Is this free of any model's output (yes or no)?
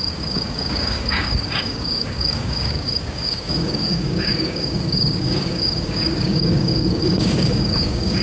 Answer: no